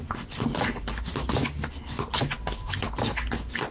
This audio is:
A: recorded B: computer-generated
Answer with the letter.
A